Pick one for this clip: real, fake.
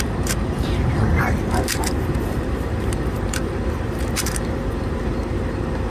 fake